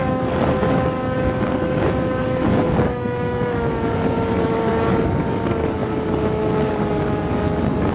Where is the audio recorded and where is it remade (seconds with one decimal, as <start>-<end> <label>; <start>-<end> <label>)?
0.0-7.9 remade